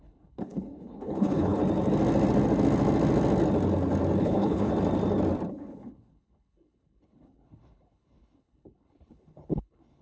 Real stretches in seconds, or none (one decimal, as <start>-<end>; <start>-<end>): 1.6-4.2; 4.7-5.5